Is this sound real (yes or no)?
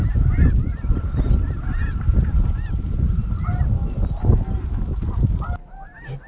yes